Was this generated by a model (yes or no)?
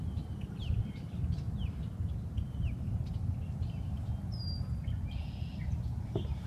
no